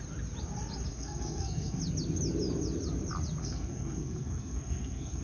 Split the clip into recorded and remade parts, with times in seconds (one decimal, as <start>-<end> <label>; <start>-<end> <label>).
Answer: 0.0-0.9 recorded; 0.9-1.8 remade; 1.8-3.4 recorded; 3.4-5.2 remade